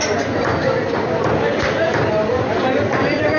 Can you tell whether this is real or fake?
real